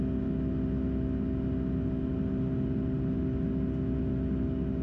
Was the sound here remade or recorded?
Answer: recorded